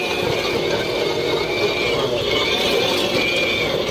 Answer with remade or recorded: recorded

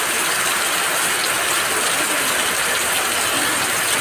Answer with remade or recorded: recorded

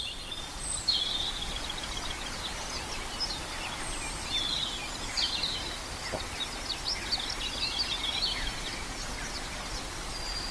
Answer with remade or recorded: recorded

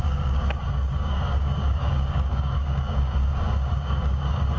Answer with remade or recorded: remade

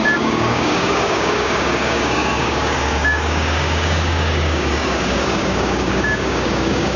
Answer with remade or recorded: remade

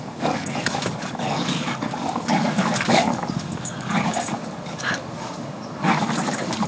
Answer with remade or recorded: remade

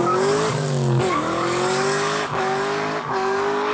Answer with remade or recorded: remade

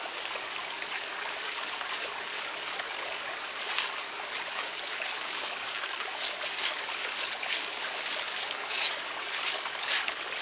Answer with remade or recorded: remade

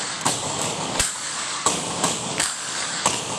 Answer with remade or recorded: remade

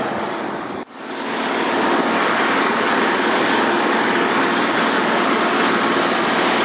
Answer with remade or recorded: remade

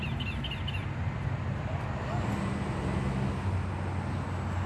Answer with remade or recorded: recorded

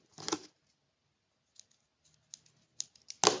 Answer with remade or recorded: recorded